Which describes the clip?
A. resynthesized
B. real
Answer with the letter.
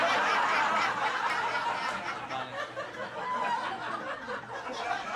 B